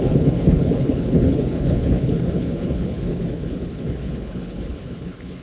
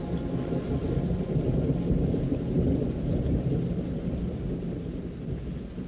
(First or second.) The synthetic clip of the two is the first